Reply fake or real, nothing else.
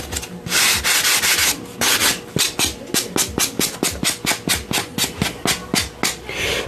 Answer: real